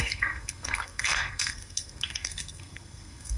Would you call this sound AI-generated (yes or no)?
yes